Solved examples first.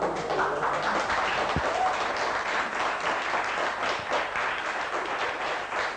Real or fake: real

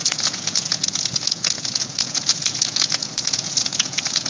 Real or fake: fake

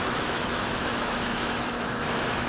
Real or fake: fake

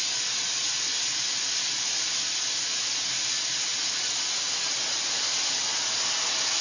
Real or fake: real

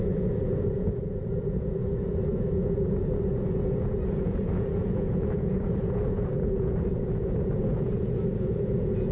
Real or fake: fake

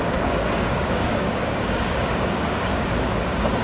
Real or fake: fake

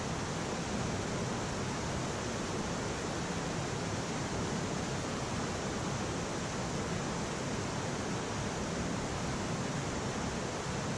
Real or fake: real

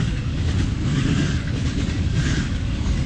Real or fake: fake